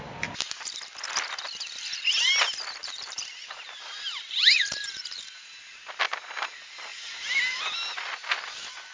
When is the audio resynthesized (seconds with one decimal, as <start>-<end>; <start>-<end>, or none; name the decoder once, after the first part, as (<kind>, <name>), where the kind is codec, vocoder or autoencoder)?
2.8-5.8 (vocoder, BigVGAN v2)